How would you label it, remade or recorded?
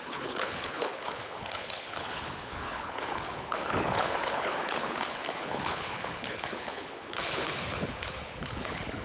remade